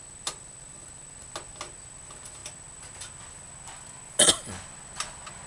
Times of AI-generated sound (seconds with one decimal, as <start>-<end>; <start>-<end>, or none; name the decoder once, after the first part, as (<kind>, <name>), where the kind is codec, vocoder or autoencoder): none